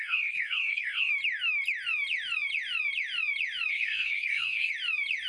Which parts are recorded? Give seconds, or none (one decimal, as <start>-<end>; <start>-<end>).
1.1-3.7; 4.7-5.3